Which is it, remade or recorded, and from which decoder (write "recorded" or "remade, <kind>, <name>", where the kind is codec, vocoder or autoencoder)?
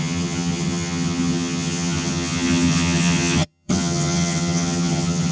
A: remade, vocoder, HiFi-GAN